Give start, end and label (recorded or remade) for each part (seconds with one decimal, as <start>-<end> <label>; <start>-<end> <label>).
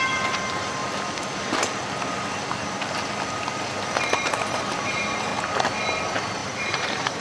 0.0-0.8 remade; 0.8-3.8 recorded; 3.8-5.3 remade; 5.3-6.0 recorded; 6.0-7.2 remade